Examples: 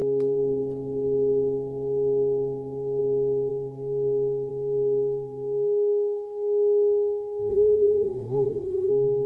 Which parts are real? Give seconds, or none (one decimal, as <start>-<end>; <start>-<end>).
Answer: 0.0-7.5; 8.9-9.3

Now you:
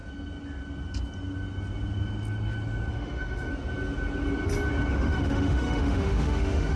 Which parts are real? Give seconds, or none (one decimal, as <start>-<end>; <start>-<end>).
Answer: 0.0-2.9; 3.5-4.9

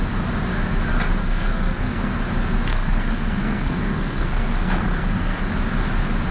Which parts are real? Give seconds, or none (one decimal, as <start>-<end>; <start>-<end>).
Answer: 0.0-1.2; 2.1-2.7; 5.4-6.3